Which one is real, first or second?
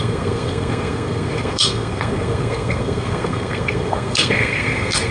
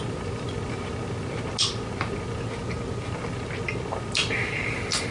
second